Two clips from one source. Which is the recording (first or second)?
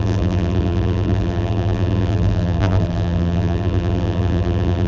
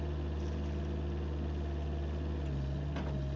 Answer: second